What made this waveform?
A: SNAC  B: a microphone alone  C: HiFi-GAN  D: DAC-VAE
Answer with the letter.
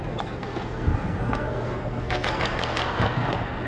A